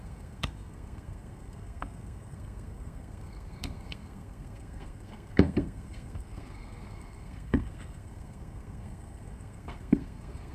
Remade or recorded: remade